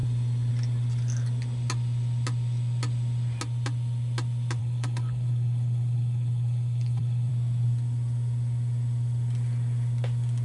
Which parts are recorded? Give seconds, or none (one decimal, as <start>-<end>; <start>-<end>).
0.0-4.6; 7.3-10.4